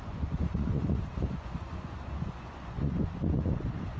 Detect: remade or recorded remade